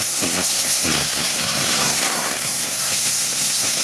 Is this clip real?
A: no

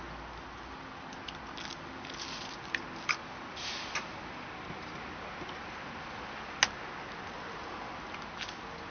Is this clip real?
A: yes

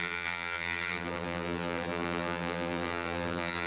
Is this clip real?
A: no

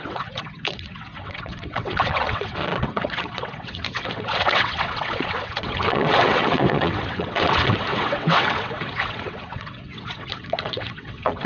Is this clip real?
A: no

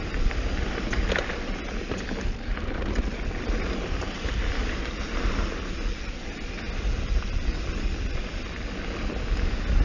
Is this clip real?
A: yes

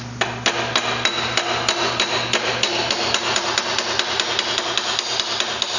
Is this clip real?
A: yes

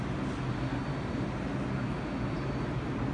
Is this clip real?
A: yes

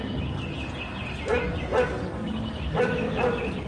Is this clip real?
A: yes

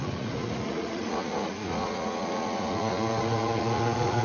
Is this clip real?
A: no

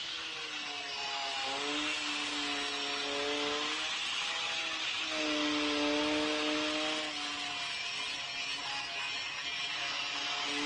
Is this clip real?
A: yes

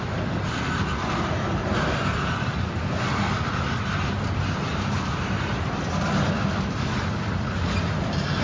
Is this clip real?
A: yes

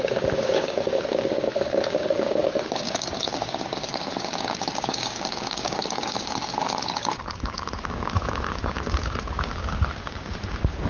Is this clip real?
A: no